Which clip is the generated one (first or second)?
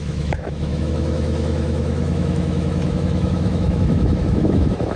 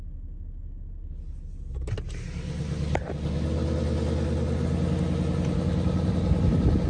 first